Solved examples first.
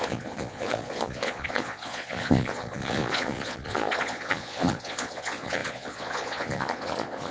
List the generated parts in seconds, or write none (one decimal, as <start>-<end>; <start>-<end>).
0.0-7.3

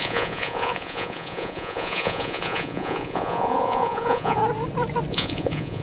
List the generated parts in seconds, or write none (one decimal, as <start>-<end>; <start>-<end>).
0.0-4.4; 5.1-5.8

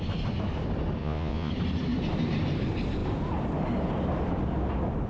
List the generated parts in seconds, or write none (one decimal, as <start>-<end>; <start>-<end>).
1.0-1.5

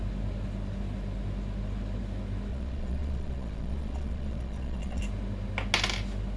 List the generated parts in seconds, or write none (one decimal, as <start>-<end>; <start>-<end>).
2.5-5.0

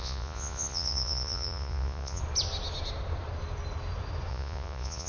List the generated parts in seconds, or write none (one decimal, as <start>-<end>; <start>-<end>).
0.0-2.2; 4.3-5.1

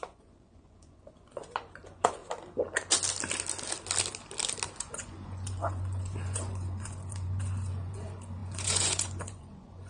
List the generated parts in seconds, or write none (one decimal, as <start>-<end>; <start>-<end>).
0.0-2.2; 4.8-9.9

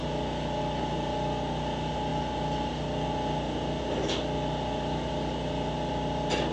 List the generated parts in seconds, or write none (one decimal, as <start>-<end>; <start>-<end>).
none